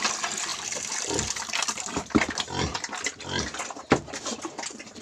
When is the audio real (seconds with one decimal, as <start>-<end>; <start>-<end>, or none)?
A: 0.0-0.5; 2.3-4.3

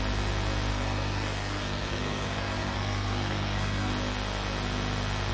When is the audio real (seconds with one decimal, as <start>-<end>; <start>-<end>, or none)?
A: 0.0-0.7; 3.9-5.3

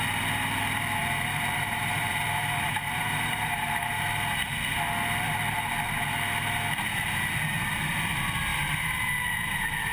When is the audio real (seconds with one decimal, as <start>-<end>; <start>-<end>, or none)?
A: 0.0-1.0; 3.9-8.5; 9.1-9.9

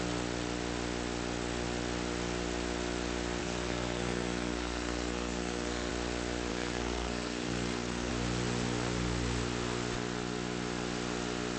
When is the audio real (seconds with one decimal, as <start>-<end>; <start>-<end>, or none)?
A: 0.0-3.4; 5.9-6.5; 8.1-11.6